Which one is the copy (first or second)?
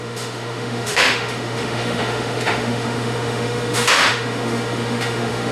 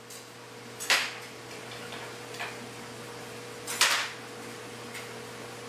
first